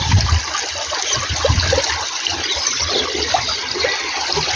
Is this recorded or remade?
recorded